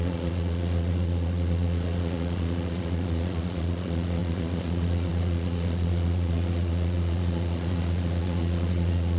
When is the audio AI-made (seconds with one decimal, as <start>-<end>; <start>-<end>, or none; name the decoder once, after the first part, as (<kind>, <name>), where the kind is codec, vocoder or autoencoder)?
0.0-9.2 (vocoder, Vocos)